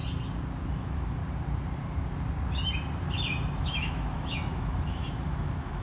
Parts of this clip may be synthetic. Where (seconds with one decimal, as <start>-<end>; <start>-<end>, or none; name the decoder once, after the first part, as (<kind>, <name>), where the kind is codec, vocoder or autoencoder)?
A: 0.7-1.2 (autoencoder, DAC-VAE); 3.6-5.8